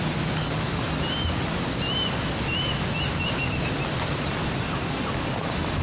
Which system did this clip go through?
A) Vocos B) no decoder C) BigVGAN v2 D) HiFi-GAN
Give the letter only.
B